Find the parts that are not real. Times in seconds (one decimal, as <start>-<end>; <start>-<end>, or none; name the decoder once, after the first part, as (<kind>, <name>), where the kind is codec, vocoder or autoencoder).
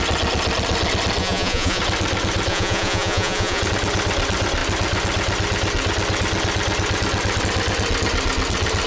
1.2-1.8 (vocoder, Vocos); 2.5-3.6